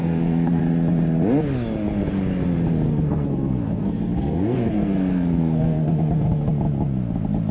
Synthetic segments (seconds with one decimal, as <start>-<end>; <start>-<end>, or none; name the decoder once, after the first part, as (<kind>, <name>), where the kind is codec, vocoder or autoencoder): 0.0-0.6 (codec, SNAC); 2.9-6.5